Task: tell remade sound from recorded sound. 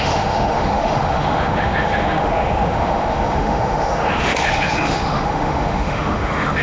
remade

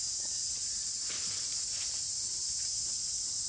recorded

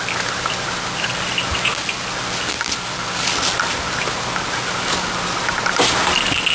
recorded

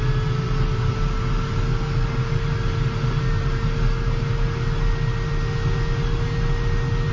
recorded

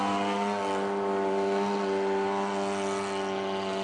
recorded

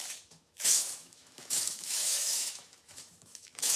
remade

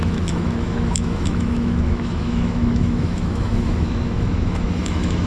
remade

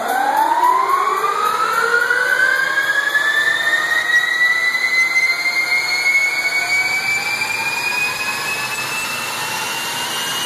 recorded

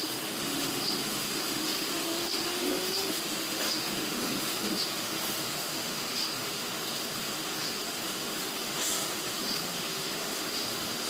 remade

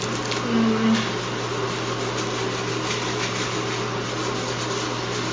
recorded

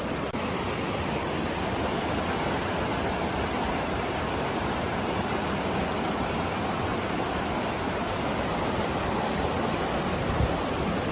recorded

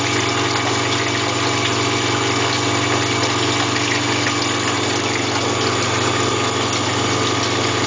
recorded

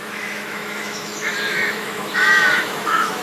remade